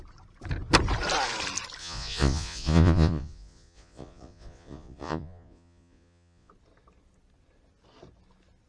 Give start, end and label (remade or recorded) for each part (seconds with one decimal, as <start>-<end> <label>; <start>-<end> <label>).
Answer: 0.0-1.8 recorded; 1.8-6.5 remade; 6.5-8.7 recorded